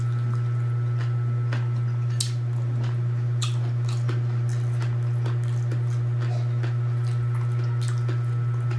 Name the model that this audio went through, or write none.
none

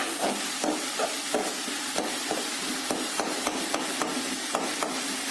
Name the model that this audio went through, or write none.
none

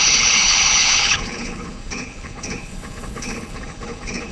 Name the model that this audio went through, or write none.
codec, HILCodec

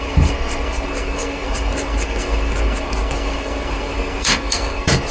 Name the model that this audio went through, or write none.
codec, SNAC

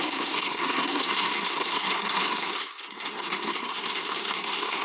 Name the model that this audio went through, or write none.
codec, SNAC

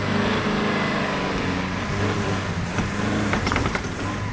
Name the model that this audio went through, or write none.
vocoder, BigVGAN v2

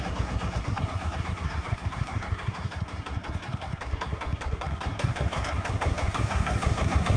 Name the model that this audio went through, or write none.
codec, SNAC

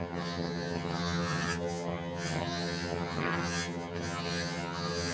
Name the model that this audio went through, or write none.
vocoder, HiFi-GAN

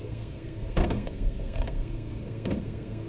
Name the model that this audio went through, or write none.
codec, SNAC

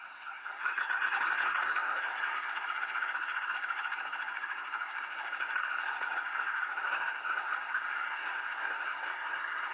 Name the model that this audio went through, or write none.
codec, SNAC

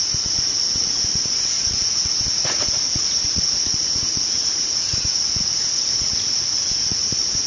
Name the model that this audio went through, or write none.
vocoder, Vocos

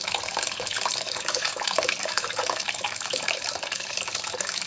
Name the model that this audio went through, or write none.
codec, DAC